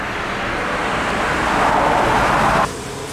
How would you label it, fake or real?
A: real